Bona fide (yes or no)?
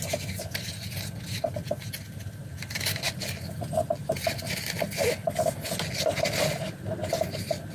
yes